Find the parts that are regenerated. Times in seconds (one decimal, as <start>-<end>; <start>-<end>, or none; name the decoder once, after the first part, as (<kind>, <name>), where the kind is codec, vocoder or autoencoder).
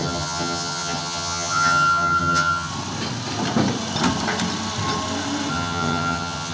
0.0-2.7 (vocoder, HiFi-GAN); 5.5-6.5